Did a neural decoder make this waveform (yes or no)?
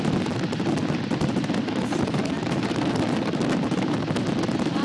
no